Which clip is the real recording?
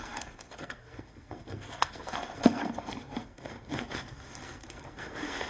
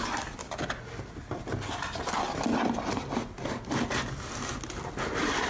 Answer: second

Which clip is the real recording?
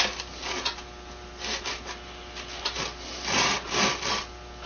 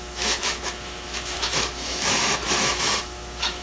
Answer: first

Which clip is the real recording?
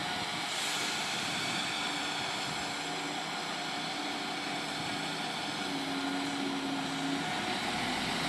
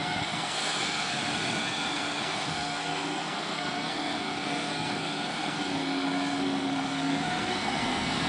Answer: first